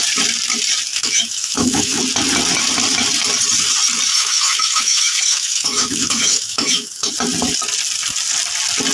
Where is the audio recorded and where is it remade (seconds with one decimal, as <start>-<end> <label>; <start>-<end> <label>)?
0.0-0.9 recorded; 0.9-2.0 remade; 2.0-4.1 recorded; 4.1-7.1 remade; 7.1-8.9 recorded